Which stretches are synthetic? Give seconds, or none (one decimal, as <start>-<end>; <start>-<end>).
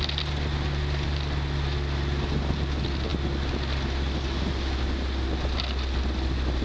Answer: none